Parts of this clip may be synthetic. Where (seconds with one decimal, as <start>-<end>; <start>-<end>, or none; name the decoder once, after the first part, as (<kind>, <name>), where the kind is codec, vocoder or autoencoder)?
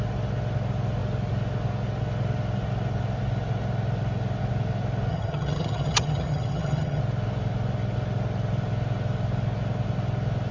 5.1-7.0 (vocoder, HiFi-GAN)